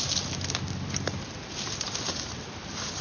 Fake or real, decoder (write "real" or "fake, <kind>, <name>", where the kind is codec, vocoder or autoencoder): real